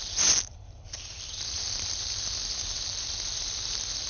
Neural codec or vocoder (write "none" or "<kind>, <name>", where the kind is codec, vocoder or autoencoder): none